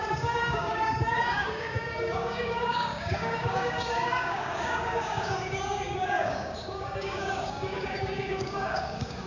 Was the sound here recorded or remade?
remade